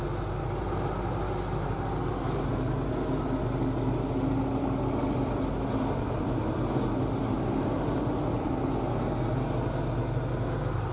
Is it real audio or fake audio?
real